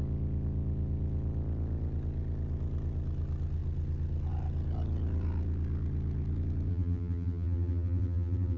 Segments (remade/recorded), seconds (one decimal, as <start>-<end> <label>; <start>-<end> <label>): 0.0-6.7 recorded; 6.7-8.6 remade